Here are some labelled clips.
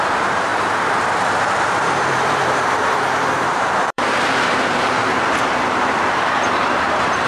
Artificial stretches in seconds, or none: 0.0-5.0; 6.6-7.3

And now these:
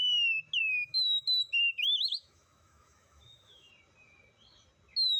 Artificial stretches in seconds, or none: 0.6-3.7

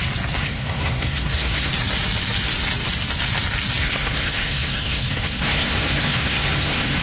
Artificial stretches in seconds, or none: 0.4-1.7; 3.8-7.0

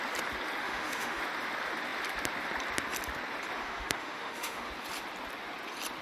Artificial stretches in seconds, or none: 0.6-1.2; 3.6-4.7

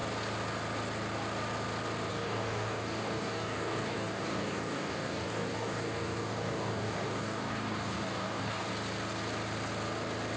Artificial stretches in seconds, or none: 2.1-8.7